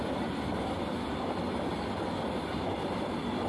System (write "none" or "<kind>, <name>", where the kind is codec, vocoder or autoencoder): none